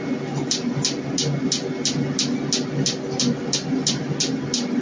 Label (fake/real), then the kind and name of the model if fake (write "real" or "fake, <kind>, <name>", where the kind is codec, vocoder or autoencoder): real